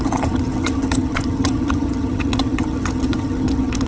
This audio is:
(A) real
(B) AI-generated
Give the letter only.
B